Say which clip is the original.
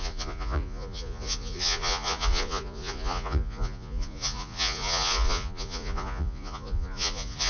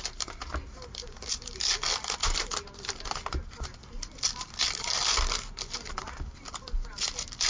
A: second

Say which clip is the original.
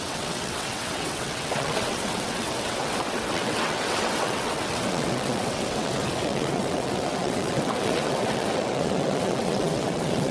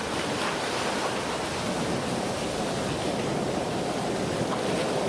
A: second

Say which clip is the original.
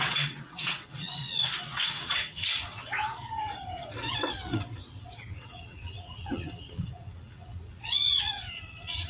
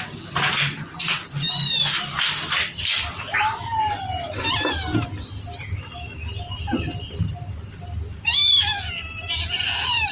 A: second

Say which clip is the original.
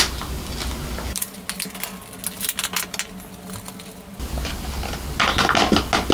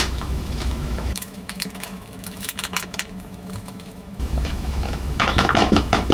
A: first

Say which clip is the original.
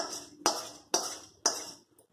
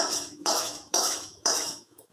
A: first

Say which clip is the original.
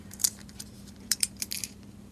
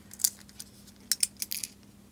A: second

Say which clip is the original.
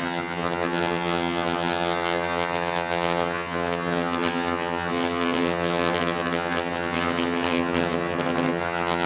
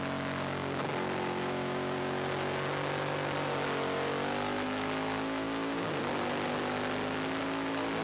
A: second